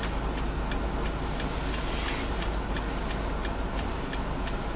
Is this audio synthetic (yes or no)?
no